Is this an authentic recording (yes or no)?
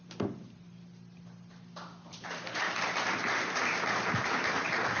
yes